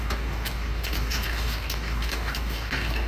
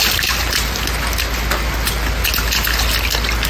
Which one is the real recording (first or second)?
second